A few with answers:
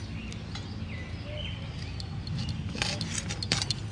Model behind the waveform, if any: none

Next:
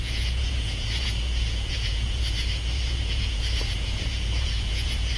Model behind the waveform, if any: vocoder, Vocos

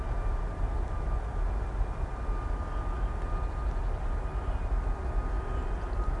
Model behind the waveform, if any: none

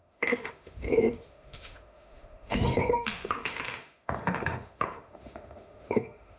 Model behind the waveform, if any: autoencoder, DAC-VAE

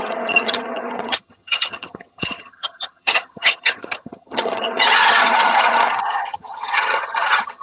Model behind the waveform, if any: vocoder, HiFi-GAN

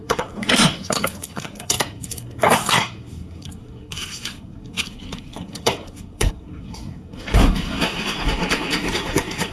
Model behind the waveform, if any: codec, SNAC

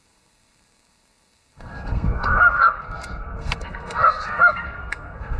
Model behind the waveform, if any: codec, SNAC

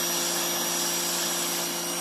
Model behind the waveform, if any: none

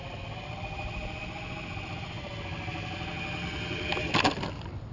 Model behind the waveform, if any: none